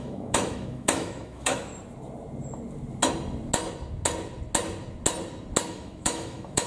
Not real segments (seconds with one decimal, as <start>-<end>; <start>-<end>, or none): 0.0-1.7; 5.7-6.7